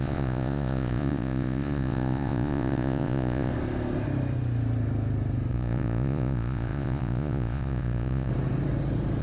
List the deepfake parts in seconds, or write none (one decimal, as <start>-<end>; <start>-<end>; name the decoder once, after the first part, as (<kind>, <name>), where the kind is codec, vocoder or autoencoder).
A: 0.0-3.5 (vocoder, Vocos); 5.5-8.3